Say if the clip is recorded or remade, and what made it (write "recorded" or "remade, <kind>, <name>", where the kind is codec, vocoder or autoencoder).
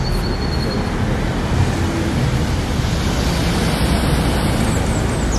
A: recorded